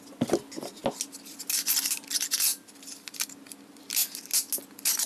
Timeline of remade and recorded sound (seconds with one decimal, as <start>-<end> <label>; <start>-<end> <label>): 0.0-2.5 recorded; 2.5-3.3 remade; 3.3-5.1 recorded